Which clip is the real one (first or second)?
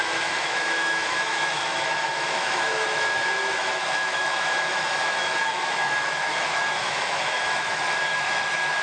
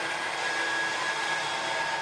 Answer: second